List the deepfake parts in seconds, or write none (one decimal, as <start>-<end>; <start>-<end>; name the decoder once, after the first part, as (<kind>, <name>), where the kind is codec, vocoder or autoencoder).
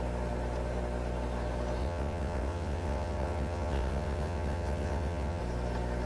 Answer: 1.8-5.4 (vocoder, WaveNeXt)